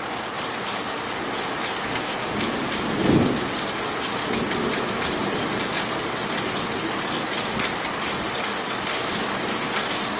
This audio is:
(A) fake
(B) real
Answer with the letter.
B